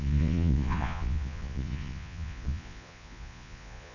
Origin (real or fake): fake